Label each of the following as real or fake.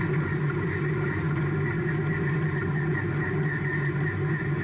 real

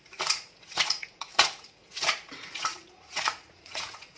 fake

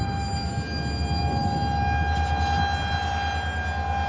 real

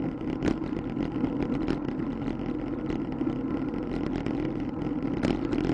real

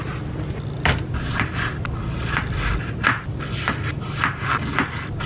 real